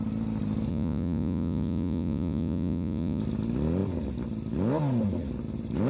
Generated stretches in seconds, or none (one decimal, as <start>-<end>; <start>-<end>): 0.7-3.2

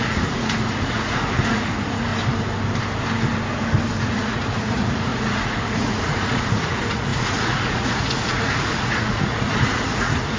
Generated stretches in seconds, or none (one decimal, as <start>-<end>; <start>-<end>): 0.0-2.1; 4.0-10.4

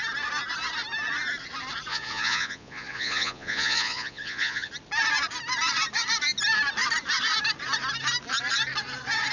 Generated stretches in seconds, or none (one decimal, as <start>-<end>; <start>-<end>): 1.9-4.7

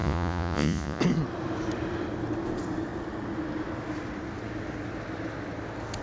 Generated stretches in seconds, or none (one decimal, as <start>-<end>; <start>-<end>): 0.0-1.0

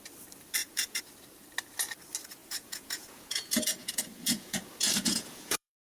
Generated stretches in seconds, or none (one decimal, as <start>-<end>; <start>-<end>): 0.6-1.1; 2.4-5.8

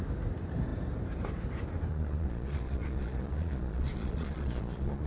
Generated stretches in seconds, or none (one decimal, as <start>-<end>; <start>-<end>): 1.9-5.1

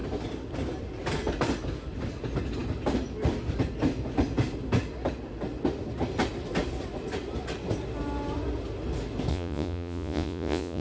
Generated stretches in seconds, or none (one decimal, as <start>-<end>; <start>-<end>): 9.3-10.8

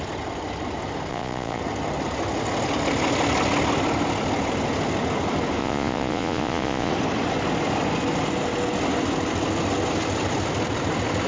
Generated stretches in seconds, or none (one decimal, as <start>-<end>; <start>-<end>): 1.1-1.6; 5.6-6.9